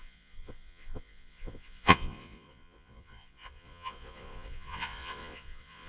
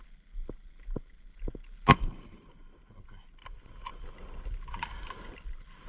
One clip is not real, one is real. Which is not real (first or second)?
first